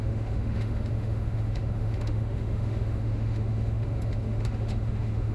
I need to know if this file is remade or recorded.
remade